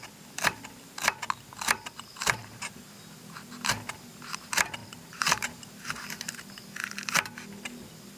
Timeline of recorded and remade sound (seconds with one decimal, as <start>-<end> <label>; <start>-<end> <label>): 0.0-2.1 recorded; 2.1-2.8 remade; 2.8-4.8 recorded; 4.8-5.9 remade; 5.9-8.2 recorded